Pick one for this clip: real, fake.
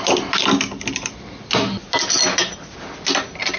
real